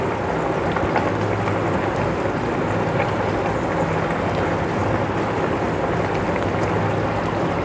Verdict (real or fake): real